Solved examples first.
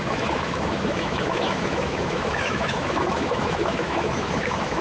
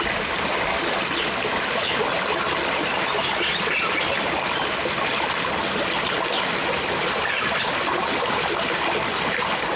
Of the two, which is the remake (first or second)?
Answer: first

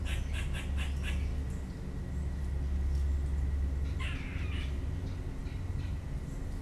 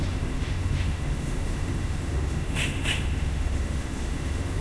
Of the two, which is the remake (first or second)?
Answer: second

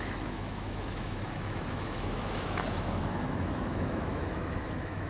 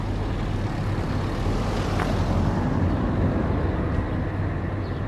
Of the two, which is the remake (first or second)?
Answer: first